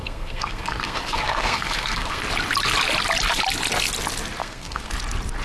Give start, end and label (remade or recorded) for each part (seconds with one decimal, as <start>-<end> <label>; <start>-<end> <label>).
0.0-2.2 remade; 2.2-4.4 recorded; 4.4-4.9 remade; 4.9-5.4 recorded